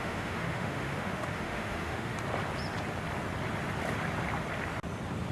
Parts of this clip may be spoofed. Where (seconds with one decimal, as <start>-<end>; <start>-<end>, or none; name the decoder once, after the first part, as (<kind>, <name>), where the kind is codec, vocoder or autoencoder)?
0.0-2.1 (autoencoder, DAC-VAE)